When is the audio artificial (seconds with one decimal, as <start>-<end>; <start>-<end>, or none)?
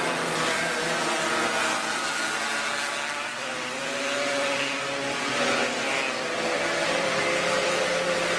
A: none